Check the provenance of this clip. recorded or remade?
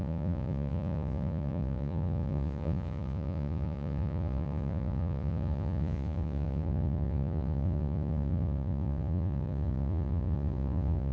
remade